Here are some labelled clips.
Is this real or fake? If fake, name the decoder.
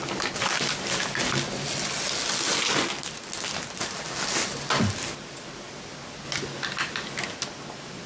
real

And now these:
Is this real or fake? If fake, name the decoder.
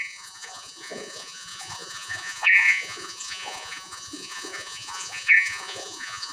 fake, vocoder, Vocos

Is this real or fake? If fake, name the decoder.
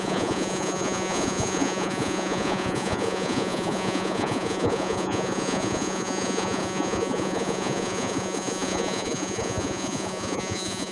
fake, vocoder, Vocos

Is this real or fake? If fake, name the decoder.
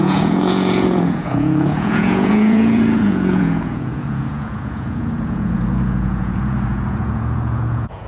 fake, vocoder, Vocos